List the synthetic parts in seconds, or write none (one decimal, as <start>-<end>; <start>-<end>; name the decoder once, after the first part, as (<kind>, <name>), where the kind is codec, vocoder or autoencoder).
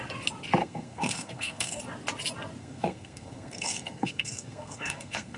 0.6-1.8 (codec, SNAC); 2.6-5.4